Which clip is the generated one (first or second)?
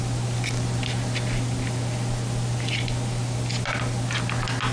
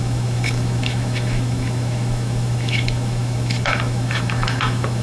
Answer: second